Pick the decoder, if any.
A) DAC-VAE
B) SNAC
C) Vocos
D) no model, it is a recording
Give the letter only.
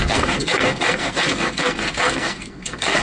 B